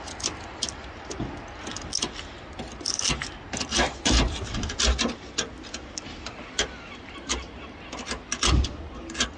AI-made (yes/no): no